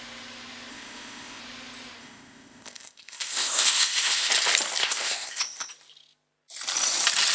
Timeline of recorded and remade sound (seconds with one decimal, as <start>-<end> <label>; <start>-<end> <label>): 0.0-0.7 recorded; 0.7-1.4 remade; 1.4-2.0 recorded; 2.0-4.3 remade; 4.3-4.8 recorded; 4.8-5.7 remade; 5.7-7.3 recorded